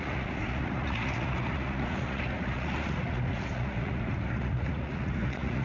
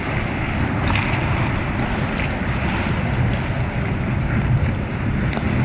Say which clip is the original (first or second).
second